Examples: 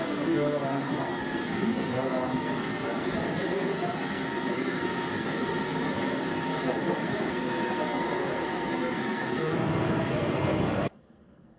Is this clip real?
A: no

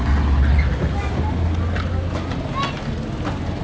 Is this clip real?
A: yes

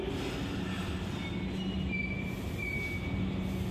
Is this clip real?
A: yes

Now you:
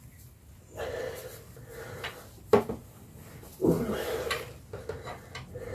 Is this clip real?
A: yes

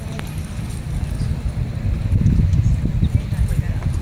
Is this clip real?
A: yes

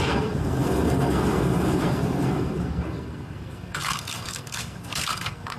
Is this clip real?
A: no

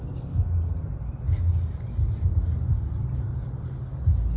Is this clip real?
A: yes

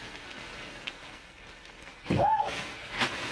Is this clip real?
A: no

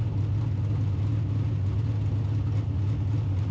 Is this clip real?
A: yes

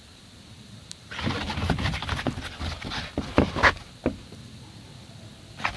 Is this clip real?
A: yes